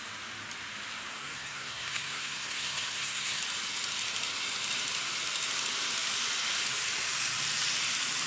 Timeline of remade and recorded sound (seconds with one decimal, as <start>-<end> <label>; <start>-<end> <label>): 0.0-1.1 recorded; 1.1-3.4 remade; 3.4-8.3 recorded